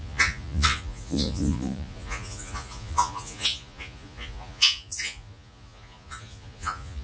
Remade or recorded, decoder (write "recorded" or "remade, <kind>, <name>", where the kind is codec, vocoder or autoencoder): remade, vocoder, Vocos